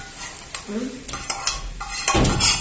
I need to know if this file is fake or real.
real